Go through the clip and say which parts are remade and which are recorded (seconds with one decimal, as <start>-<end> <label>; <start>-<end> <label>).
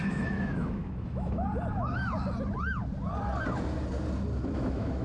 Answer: 0.0-1.5 remade; 1.5-4.5 recorded; 4.5-5.0 remade